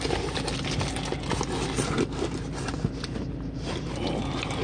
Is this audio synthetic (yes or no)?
no